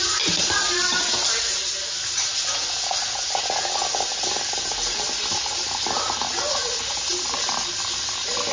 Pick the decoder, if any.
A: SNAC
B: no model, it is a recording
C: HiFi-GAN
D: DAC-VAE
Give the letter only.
B